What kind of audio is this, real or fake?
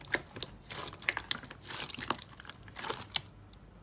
real